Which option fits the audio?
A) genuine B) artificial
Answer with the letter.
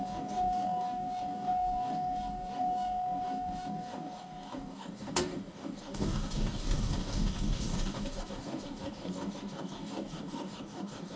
B